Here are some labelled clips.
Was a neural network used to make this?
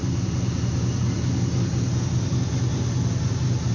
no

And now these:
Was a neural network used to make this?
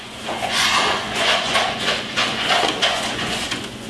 yes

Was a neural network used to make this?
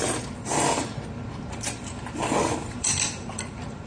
yes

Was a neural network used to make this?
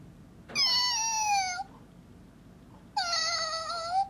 no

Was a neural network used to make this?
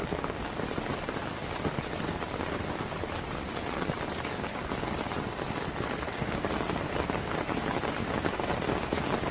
no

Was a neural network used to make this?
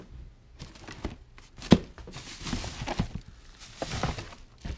no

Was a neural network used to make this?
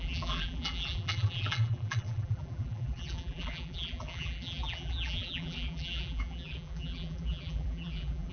yes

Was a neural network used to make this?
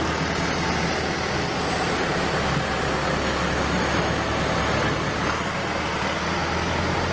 no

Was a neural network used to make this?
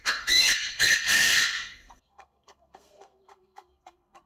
yes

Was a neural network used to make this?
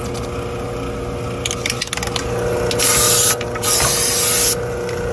no